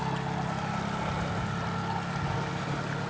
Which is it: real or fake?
real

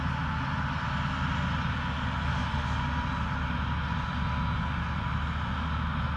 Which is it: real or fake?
real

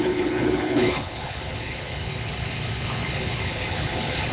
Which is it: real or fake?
fake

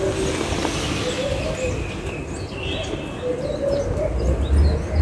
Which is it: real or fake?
real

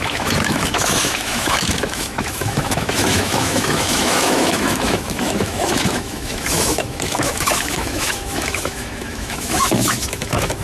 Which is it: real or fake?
fake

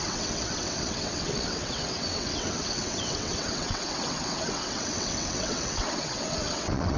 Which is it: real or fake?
fake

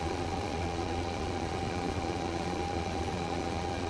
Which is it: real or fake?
fake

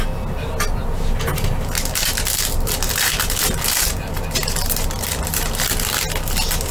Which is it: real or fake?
real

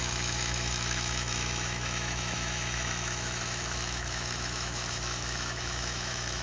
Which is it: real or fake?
fake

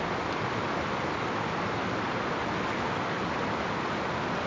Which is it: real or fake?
real